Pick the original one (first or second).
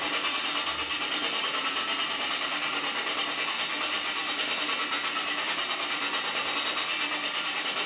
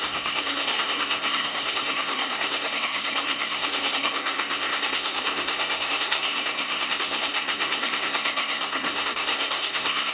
first